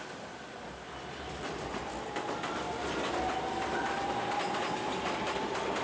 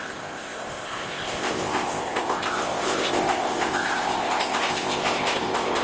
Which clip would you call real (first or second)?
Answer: first